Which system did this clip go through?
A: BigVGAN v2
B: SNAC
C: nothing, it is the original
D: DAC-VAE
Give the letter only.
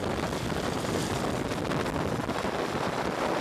C